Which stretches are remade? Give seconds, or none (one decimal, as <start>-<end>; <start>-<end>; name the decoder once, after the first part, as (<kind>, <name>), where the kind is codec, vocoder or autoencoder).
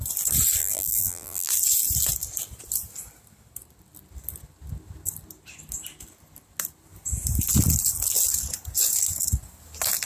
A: 0.6-1.5 (vocoder, BigVGAN v2)